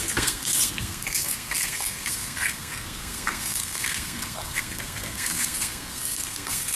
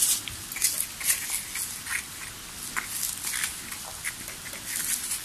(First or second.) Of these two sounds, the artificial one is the first